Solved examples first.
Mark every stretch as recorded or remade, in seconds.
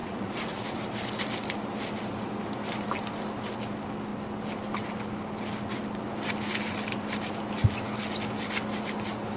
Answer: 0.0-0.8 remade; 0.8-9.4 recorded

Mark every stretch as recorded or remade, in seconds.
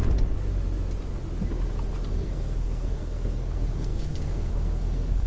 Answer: 0.0-2.1 recorded; 2.1-5.3 remade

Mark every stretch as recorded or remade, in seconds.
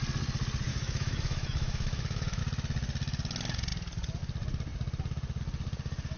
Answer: 0.0-0.7 recorded; 0.7-2.4 remade; 2.4-6.2 recorded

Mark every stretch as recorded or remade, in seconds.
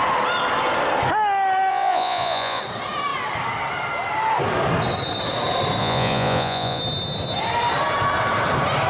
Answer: 0.0-1.7 recorded; 1.7-2.6 remade; 2.6-5.8 recorded; 5.8-6.8 remade; 6.8-8.9 recorded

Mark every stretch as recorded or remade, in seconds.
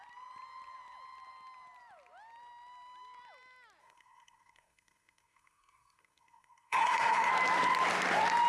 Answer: 0.0-3.8 recorded; 3.8-7.3 remade; 7.3-8.5 recorded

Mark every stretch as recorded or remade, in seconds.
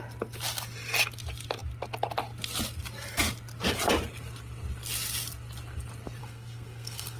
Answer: 0.0-6.2 recorded; 6.2-7.2 remade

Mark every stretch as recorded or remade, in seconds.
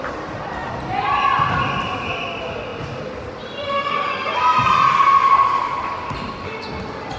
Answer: 0.0-7.2 recorded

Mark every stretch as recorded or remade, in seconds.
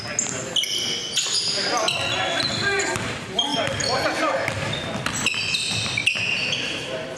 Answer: 0.0-7.2 recorded